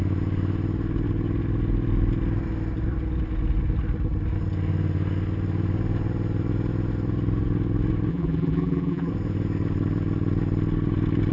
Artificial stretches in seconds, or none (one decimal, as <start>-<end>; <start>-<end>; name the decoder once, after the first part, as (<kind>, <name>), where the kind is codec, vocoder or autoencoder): 8.1-9.1 (vocoder, BigVGAN v2)

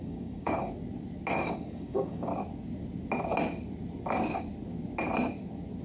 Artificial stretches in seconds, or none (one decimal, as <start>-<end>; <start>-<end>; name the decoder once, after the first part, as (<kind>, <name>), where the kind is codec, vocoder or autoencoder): 0.0-0.6 (codec, DAC); 1.3-2.3

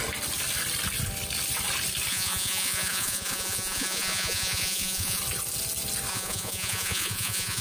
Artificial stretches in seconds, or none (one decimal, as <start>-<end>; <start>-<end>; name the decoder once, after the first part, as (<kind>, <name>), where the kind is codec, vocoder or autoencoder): 2.1-5.2 (vocoder, Vocos); 6.1-7.6

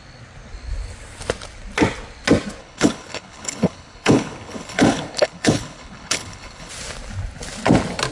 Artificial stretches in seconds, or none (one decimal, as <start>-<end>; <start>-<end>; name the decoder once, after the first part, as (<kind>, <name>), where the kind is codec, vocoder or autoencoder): 2.6-6.7 (codec, HILCodec)

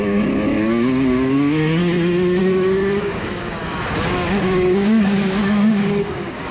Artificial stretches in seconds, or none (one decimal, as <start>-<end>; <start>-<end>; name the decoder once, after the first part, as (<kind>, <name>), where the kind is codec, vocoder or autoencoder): 0.0-1.8 (codec, DAC); 2.4-3.6; 4.1-6.5

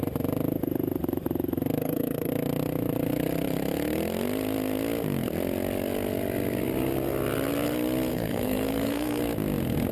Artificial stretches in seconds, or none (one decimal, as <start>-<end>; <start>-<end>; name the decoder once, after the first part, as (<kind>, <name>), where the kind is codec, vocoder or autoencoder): 1.8-2.3 (codec, SNAC); 8.1-9.2

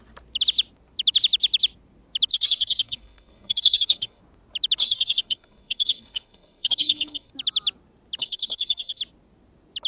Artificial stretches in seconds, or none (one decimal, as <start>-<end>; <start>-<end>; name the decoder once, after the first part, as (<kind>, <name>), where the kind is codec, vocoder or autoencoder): 2.3-4.2 (codec, SNAC); 4.8-7.3; 8.2-9.0